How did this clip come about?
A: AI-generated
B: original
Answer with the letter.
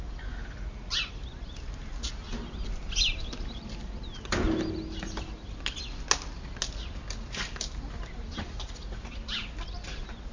B